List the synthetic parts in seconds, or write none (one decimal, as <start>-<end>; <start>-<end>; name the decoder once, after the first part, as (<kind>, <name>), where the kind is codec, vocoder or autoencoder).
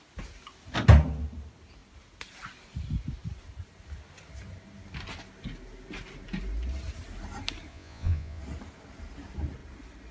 7.7-8.4 (vocoder, Vocos)